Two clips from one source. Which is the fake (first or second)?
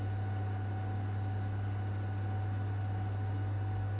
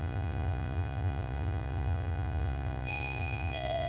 second